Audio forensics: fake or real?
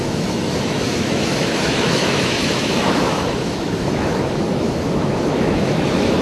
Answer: fake